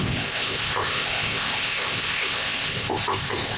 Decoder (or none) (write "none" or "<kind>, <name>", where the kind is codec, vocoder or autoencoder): codec, ZipCodec